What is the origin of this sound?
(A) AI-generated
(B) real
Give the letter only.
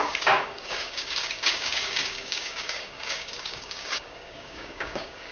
A